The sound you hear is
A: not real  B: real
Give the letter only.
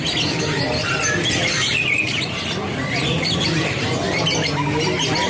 B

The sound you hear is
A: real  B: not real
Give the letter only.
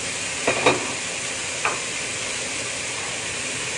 B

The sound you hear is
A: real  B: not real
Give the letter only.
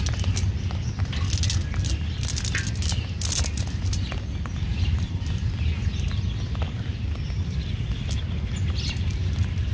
A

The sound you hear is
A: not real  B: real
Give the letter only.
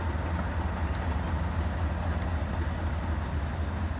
B